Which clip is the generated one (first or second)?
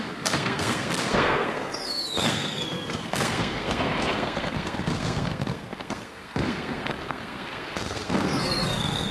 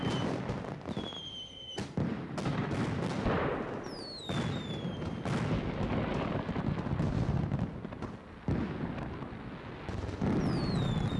first